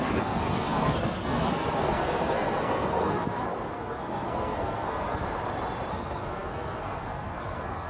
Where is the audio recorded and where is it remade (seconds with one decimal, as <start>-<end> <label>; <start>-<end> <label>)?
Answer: 0.0-5.2 remade; 5.2-5.9 recorded; 5.9-7.9 remade